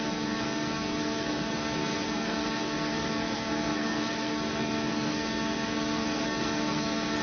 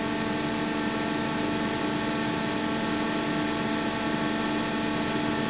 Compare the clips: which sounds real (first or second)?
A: second